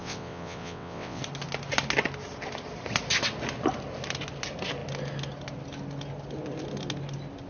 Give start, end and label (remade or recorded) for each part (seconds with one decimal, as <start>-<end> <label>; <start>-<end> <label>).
0.0-1.2 remade; 1.2-7.5 recorded